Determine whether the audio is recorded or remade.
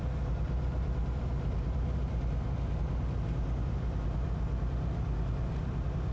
recorded